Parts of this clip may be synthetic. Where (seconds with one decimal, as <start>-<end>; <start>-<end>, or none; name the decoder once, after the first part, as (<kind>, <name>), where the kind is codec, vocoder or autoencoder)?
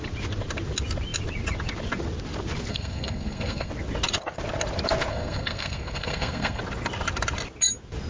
2.7-3.7 (codec, SNAC); 5.1-6.6